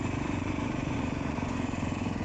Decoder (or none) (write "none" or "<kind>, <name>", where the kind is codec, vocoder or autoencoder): vocoder, Vocos